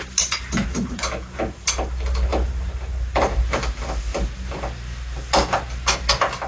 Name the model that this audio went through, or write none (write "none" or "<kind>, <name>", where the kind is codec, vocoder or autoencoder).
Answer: none